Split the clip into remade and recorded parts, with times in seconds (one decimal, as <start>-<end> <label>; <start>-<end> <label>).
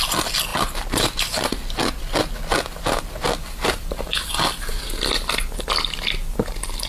0.0-6.9 recorded